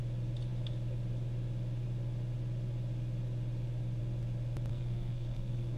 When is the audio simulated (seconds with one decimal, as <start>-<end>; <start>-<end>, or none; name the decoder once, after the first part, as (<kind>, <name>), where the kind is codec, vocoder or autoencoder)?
4.7-5.8 (codec, SNAC)

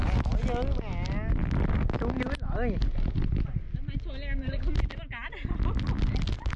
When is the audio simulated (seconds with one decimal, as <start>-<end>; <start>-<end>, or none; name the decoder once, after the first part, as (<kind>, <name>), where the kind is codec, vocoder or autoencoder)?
none

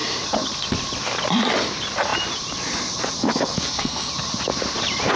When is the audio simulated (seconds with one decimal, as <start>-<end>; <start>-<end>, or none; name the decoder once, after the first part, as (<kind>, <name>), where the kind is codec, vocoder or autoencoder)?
3.2-4.1 (codec, SNAC)

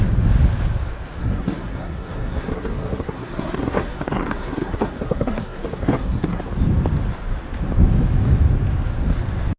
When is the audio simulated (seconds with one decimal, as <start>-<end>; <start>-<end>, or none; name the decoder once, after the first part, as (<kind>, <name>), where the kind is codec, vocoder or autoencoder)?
1.2-6.4 (codec, SNAC)

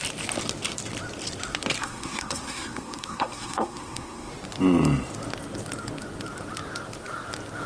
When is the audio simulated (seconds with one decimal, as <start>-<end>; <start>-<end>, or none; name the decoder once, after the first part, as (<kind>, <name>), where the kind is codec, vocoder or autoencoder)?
1.8-4.3 (codec, SNAC)

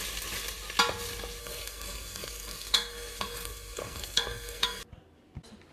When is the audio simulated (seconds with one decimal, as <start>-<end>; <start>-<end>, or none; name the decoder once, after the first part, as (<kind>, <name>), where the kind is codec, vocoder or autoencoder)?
1.4-4.8 (codec, SNAC)

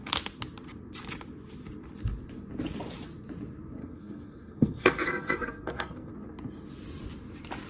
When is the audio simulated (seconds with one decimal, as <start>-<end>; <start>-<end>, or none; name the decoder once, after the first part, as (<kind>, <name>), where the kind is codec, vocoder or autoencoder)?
3.8-6.1 (codec, SNAC)